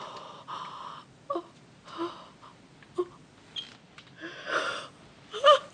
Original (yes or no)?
yes